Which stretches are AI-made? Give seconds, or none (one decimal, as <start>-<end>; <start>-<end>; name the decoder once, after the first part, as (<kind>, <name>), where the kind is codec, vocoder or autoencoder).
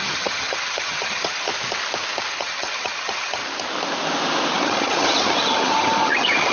0.0-1.5 (vocoder, HiFi-GAN); 2.3-3.4; 4.5-6.5